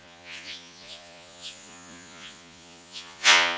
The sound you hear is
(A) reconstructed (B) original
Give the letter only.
A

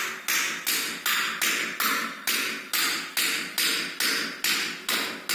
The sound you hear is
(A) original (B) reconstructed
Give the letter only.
A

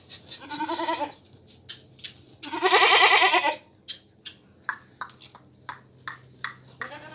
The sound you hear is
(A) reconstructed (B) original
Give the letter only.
B